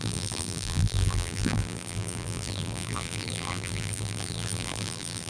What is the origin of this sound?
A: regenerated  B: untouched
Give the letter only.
A